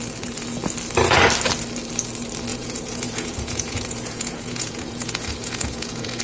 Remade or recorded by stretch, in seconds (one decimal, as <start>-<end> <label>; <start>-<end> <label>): 0.0-2.5 recorded; 2.5-6.2 remade